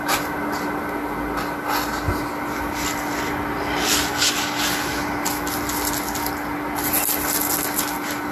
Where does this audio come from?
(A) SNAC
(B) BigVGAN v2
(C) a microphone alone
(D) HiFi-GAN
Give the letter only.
C